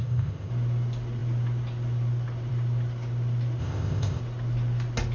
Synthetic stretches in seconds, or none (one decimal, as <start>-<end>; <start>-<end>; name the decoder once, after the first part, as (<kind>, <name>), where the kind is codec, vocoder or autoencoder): 0.0-0.5 (codec, ZipCodec); 3.6-4.2